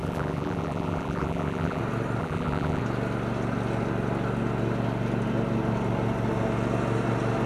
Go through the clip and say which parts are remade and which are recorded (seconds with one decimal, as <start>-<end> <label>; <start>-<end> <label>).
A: 0.0-1.8 remade; 1.8-2.2 recorded; 2.2-2.8 remade; 2.8-7.5 recorded